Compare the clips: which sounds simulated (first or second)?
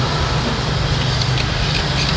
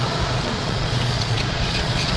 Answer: second